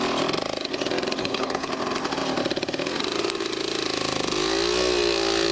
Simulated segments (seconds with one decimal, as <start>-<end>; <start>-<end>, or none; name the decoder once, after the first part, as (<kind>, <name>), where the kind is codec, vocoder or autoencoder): 1.2-1.7 (codec, HILCodec)